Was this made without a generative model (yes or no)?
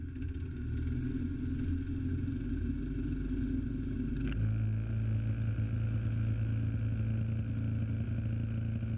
yes